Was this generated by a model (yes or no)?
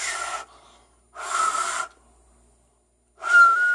no